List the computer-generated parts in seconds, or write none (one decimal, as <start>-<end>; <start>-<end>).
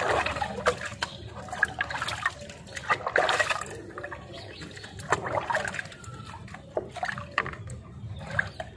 none